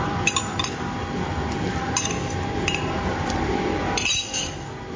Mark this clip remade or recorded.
remade